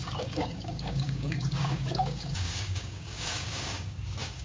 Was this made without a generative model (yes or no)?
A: no